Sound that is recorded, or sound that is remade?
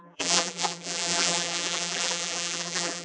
remade